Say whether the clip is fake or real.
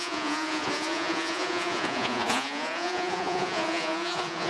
fake